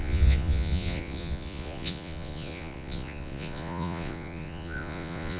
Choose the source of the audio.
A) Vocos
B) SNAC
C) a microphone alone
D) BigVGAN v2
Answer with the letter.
A